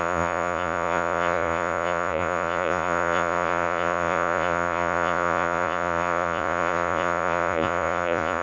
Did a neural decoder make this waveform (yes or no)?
yes